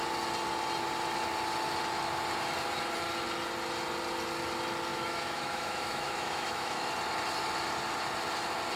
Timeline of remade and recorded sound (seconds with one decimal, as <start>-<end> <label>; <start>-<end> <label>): 0.0-4.9 recorded; 4.9-6.9 remade; 6.9-8.8 recorded